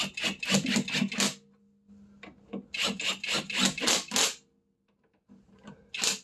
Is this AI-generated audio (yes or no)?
no